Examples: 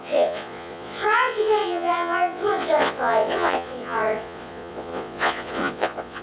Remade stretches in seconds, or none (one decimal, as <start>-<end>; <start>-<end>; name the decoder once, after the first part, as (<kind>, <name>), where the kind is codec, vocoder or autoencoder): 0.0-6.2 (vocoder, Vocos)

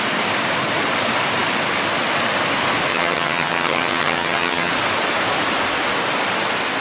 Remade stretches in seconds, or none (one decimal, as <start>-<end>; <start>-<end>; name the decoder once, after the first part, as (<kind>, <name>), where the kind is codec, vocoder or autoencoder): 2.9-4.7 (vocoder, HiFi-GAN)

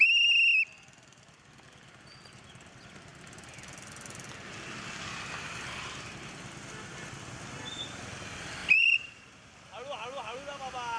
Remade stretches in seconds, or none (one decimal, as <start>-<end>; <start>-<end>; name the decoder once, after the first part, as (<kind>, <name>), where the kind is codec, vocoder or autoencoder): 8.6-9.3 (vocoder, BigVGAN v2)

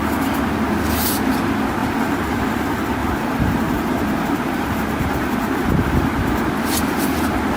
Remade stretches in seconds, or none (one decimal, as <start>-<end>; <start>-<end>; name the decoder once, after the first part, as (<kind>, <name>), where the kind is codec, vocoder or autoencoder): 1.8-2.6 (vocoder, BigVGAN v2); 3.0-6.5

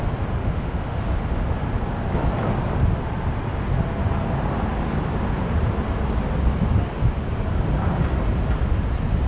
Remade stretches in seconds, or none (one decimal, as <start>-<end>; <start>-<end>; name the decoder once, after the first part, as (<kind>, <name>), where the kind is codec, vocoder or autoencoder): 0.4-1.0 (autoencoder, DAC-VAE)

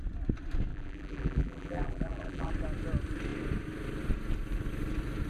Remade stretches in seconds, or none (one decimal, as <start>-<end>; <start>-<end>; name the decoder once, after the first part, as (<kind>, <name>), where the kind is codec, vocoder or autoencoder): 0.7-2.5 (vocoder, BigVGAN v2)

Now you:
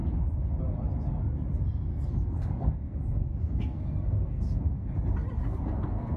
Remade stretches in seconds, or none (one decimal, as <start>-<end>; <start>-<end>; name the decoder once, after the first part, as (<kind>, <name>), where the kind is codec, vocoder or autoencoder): 1.9-4.9 (codec, SNAC); 5.5-6.2

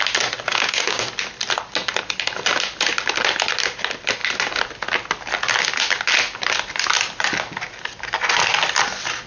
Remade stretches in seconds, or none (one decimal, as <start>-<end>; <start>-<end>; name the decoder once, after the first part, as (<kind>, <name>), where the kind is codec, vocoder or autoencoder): 0.5-1.1 (codec, DAC)